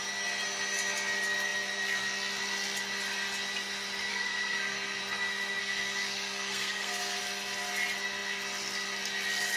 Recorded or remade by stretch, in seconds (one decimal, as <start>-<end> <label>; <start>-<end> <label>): 0.0-4.1 recorded; 4.1-5.0 remade; 5.0-5.6 recorded; 5.6-7.2 remade; 7.2-9.6 recorded